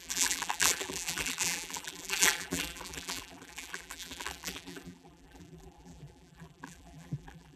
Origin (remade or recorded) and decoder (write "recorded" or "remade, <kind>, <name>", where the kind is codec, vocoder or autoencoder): remade, vocoder, BigVGAN v2